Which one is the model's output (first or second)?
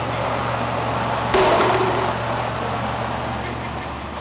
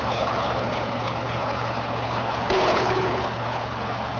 second